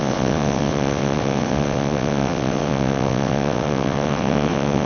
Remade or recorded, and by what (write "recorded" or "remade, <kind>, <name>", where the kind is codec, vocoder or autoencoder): remade, vocoder, WaveNeXt